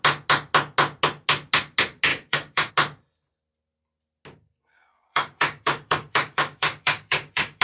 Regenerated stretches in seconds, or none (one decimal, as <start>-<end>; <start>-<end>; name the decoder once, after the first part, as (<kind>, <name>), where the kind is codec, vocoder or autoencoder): 2.1-2.7 (codec, DAC); 4.7-7.6